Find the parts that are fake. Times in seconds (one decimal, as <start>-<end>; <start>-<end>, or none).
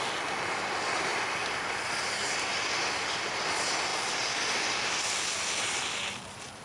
none